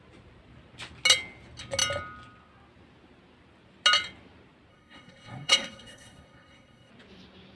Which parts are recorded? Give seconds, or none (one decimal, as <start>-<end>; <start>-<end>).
0.0-4.7; 6.9-7.6